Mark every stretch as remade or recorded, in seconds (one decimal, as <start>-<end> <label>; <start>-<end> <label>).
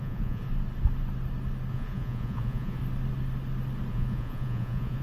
0.0-0.5 remade; 0.5-1.7 recorded; 1.7-2.8 remade; 2.8-3.9 recorded; 3.9-5.0 remade